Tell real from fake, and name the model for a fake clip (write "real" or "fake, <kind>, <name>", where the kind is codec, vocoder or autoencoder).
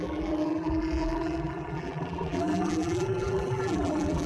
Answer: fake, vocoder, BigVGAN v2